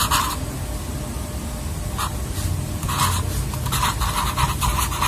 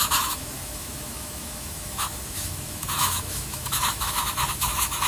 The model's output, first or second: second